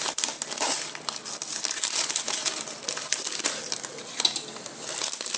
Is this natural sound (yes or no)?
yes